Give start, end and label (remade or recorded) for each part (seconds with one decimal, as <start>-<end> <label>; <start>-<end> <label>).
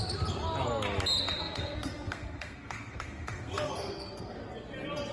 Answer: 0.0-1.4 recorded; 1.4-4.4 remade; 4.4-5.1 recorded